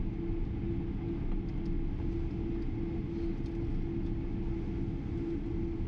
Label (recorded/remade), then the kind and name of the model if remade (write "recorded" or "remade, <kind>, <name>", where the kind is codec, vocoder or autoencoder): recorded